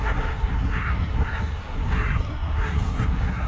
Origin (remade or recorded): remade